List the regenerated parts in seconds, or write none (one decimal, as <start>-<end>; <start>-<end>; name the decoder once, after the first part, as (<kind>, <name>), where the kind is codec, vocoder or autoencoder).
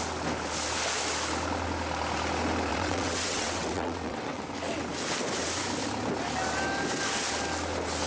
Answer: 2.7-4.4 (vocoder, WaveNeXt)